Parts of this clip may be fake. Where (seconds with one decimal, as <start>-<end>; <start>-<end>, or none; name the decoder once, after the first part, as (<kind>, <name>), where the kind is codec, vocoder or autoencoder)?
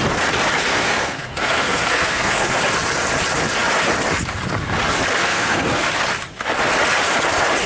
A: 0.7-2.6 (codec, SNAC); 5.2-5.9